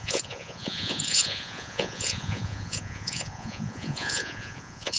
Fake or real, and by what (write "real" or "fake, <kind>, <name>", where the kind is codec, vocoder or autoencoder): fake, vocoder, Vocos